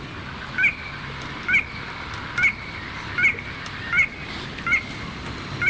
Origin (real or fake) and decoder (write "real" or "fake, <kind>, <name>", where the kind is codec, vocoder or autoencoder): real